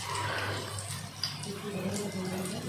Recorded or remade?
recorded